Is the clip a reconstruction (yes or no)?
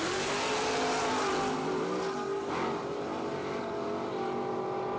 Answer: no